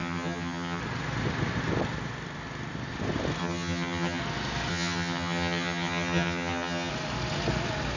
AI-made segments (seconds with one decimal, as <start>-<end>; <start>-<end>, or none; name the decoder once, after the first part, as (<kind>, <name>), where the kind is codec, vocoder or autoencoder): 0.0-0.8 (vocoder, HiFi-GAN); 3.4-4.2; 4.7-6.9